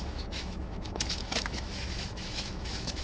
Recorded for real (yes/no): no